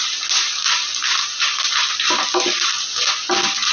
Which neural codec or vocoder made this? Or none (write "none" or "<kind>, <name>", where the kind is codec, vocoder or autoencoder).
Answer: none